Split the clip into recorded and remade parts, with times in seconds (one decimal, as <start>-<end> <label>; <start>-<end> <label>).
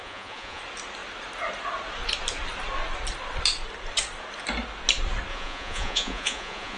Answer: 0.0-0.6 remade; 0.6-5.3 recorded; 5.3-6.8 remade